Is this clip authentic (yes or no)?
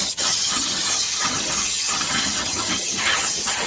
no